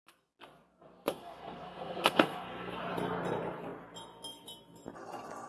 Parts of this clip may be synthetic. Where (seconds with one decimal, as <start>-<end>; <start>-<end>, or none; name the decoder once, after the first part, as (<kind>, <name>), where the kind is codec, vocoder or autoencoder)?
1.1-2.8 (codec, SNAC)